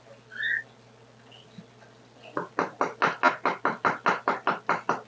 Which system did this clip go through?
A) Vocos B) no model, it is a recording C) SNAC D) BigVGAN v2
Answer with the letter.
B